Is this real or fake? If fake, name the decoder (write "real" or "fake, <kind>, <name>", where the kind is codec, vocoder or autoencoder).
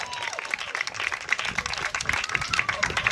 real